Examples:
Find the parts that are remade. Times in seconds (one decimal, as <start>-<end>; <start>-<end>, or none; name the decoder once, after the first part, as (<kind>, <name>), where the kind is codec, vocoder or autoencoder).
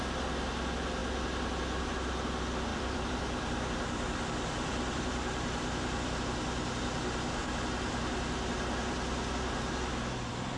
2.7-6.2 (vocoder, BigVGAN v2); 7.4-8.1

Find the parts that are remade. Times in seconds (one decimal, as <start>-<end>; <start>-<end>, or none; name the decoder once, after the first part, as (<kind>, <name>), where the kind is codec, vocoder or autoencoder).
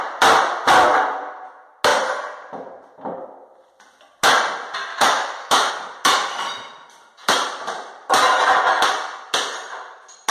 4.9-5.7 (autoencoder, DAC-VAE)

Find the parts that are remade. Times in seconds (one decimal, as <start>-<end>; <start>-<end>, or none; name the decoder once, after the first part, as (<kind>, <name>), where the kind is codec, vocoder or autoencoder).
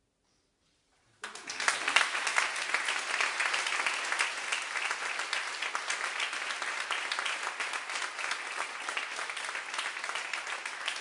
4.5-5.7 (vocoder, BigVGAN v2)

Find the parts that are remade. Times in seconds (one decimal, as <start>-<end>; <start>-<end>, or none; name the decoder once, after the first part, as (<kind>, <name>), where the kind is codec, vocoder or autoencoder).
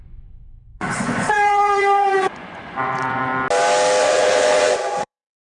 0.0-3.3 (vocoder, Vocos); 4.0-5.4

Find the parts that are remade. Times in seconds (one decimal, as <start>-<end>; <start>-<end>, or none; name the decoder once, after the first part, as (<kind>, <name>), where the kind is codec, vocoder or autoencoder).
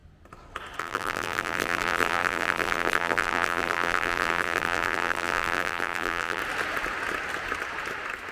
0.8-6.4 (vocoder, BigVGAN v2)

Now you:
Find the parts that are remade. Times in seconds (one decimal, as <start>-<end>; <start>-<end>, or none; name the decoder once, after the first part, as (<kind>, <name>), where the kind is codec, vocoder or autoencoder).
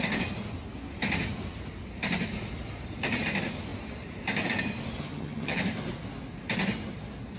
5.0-5.6 (vocoder, HiFi-GAN)